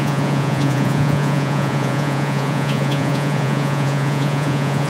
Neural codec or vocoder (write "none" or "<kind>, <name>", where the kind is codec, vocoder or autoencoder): vocoder, Vocos